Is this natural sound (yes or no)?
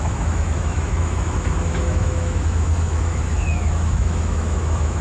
no